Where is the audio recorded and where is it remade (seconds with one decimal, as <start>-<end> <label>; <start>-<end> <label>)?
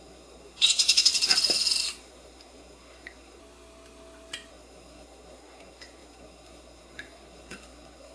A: 0.0-1.1 remade; 1.1-2.0 recorded; 2.0-3.4 remade; 3.4-4.5 recorded; 4.5-8.1 remade